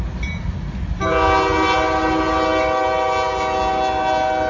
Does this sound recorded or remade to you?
recorded